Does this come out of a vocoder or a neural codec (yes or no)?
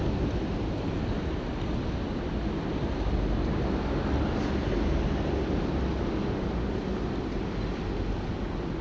no